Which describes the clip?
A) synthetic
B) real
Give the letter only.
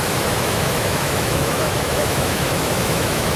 A